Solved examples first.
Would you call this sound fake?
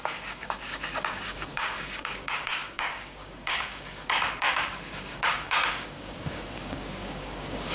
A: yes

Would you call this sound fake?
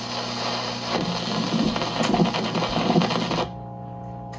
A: no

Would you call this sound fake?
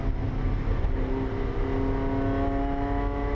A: no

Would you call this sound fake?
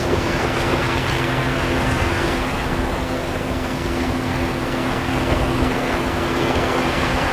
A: yes